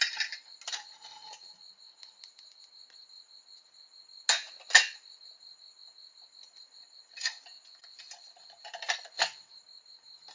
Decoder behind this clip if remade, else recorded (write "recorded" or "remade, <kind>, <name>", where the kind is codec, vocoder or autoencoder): recorded